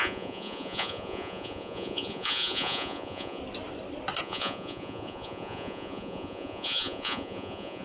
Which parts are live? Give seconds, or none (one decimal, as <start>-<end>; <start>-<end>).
3.4-4.2